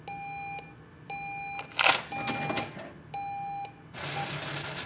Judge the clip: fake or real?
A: real